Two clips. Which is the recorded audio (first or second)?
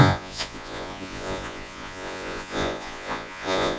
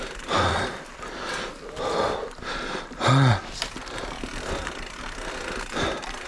second